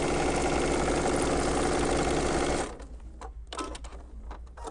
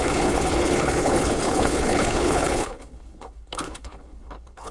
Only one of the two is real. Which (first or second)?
first